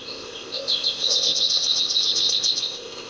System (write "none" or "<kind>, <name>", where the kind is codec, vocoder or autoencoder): codec, ZipCodec